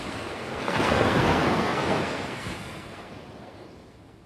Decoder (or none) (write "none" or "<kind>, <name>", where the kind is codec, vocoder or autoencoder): codec, SNAC